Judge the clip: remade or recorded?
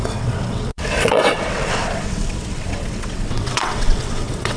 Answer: remade